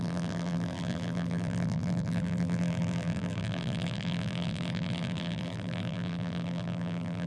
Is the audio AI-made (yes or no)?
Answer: yes